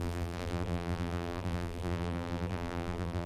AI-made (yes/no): yes